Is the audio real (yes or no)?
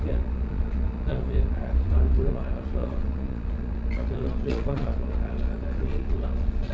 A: no